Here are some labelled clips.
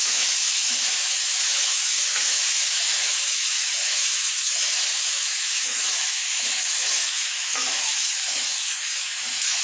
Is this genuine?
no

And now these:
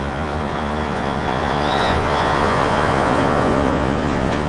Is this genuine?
no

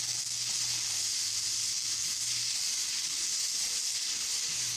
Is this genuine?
yes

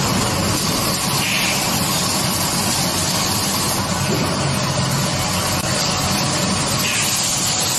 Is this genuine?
yes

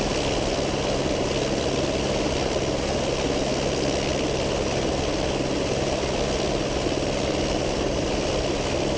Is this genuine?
yes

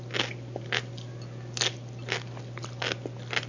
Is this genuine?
yes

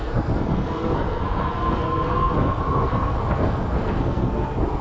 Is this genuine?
no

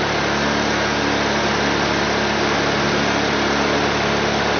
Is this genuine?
yes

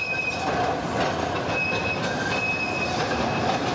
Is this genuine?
yes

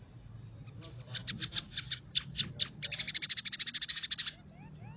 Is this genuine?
yes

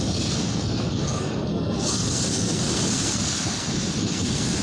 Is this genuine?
no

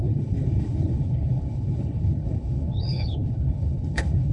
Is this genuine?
no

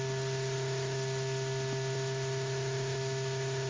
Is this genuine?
yes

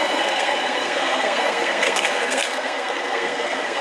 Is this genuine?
no